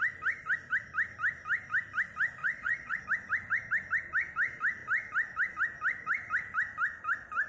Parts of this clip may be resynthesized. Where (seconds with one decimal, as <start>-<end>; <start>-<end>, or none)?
2.4-3.0